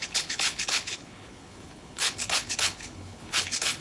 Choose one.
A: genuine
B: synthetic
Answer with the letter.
B